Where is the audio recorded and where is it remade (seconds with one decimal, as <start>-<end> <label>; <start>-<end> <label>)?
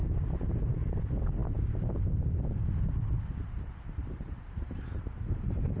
0.0-1.0 remade; 1.0-1.4 recorded; 1.4-4.8 remade; 4.8-5.8 recorded